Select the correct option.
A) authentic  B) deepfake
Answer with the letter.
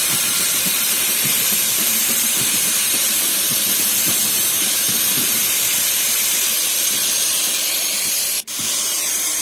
B